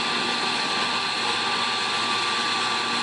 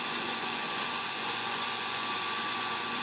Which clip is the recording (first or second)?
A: first